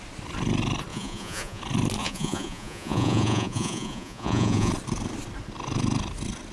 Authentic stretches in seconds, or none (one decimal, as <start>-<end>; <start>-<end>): 0.0-0.9; 1.6-2.0; 4.7-6.5